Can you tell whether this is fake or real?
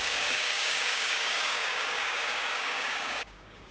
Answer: fake